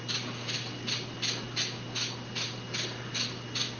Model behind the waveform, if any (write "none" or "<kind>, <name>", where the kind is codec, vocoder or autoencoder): none